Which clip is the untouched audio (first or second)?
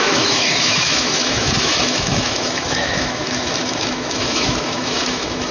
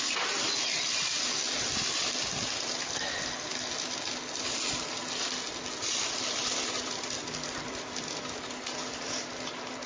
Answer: second